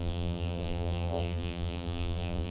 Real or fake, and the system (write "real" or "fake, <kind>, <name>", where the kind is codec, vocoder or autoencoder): fake, vocoder, BigVGAN v2